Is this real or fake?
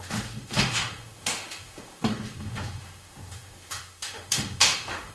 fake